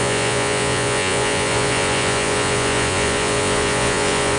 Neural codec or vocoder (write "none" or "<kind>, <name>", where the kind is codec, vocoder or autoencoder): vocoder, Vocos